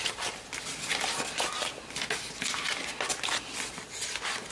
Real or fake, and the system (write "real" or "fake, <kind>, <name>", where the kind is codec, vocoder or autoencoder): real